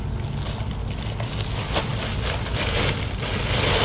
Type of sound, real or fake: real